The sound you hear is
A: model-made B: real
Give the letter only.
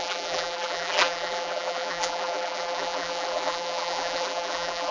A